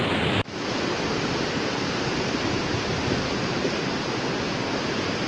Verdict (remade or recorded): recorded